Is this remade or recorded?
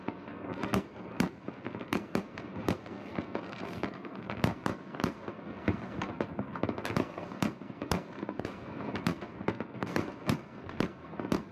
remade